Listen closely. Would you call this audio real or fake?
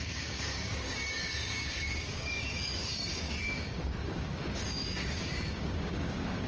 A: fake